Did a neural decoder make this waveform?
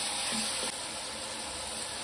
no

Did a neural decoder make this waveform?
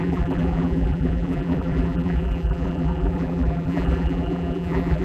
yes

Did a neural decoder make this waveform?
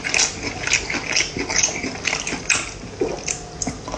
no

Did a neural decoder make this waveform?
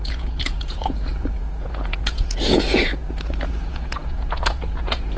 yes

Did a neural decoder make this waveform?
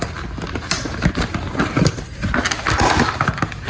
no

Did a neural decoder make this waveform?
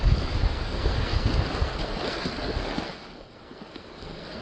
yes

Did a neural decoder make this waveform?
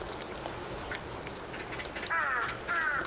no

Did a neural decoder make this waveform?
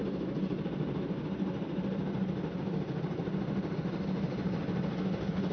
no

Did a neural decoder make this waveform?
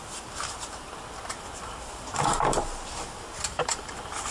no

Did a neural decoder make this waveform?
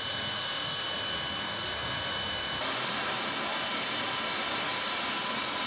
no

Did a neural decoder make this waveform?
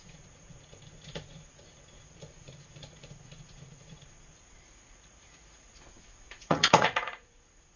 yes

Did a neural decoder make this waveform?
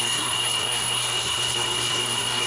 yes